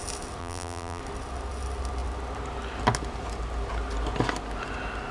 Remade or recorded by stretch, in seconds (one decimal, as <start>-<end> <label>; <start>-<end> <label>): 0.0-0.4 recorded; 0.4-1.0 remade; 1.0-5.1 recorded